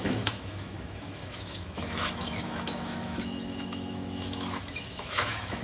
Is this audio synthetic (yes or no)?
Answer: yes